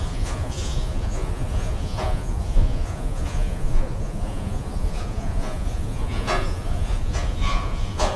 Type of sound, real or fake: fake